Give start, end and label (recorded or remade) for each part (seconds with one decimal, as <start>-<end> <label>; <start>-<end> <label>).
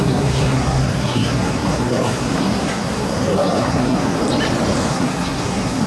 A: 0.0-4.2 remade; 4.2-4.9 recorded; 4.9-5.9 remade